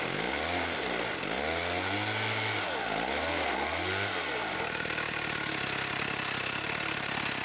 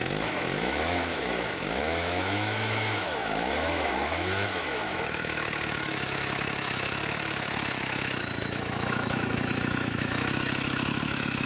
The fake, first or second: second